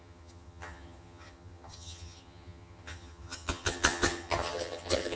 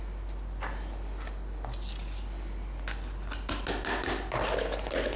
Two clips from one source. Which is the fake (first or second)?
first